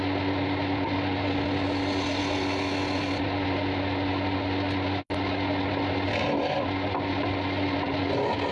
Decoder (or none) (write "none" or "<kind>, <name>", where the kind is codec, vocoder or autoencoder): none